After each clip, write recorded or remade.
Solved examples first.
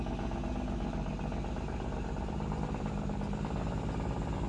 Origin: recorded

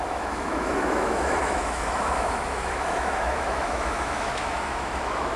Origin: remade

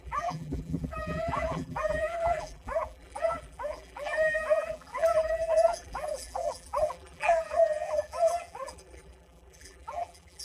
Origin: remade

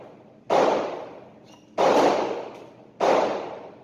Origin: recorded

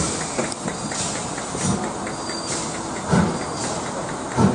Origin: recorded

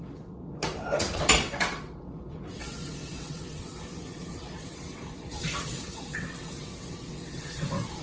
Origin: remade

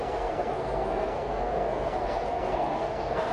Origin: remade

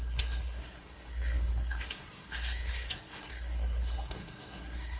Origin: remade